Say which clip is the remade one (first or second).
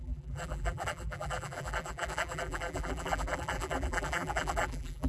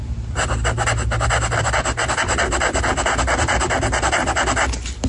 first